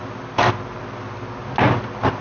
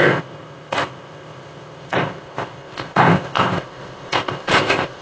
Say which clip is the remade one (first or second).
second